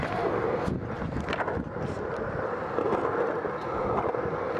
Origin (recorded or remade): recorded